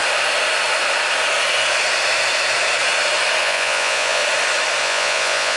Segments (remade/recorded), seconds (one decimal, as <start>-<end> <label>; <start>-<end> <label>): 0.0-3.4 recorded; 3.4-4.2 remade; 4.2-4.8 recorded; 4.8-5.6 remade